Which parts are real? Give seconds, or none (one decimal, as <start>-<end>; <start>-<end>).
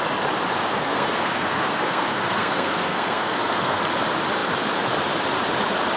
0.0-0.7; 3.8-6.0